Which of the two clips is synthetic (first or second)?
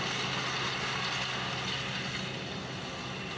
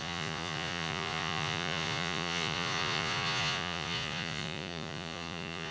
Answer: second